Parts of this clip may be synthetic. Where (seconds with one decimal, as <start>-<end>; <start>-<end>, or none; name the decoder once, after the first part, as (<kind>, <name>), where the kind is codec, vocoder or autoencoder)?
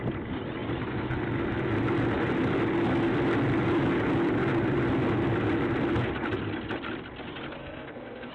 7.6-8.3 (codec, SNAC)